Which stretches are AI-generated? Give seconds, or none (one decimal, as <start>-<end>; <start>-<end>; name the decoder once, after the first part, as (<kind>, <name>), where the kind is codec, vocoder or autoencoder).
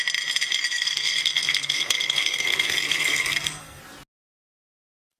0.7-3.8 (codec, SNAC)